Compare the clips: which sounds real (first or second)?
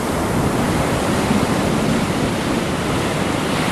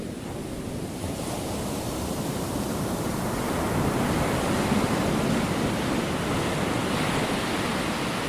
second